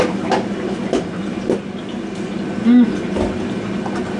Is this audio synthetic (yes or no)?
no